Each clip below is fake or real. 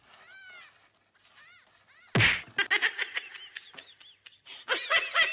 real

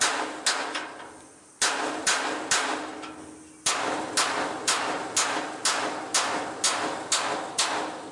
real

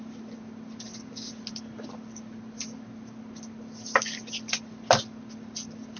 real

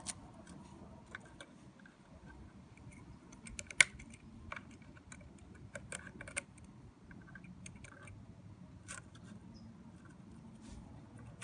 real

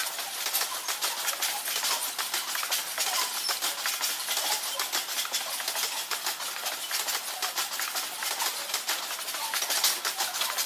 real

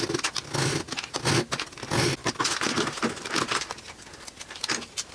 real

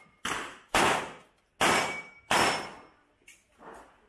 real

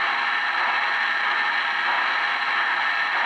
real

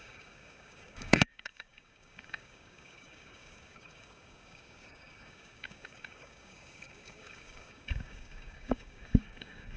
fake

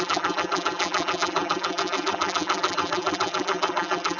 fake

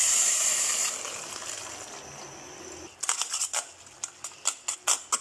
real